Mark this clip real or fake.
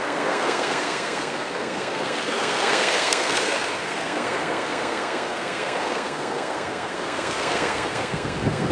fake